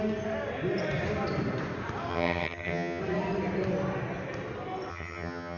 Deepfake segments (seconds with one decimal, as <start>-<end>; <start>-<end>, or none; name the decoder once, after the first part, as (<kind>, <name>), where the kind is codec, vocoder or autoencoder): 2.1-3.0 (vocoder, HiFi-GAN); 4.9-5.6